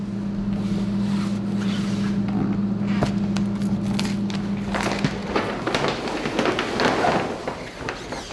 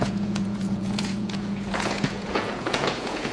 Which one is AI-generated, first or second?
second